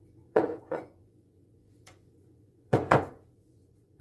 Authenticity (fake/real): fake